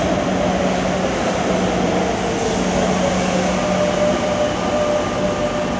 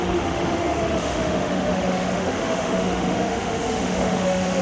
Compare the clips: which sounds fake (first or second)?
second